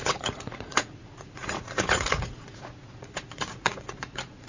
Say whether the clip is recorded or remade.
remade